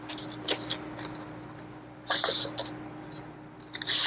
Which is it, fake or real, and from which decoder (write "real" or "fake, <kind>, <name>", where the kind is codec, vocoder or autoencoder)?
real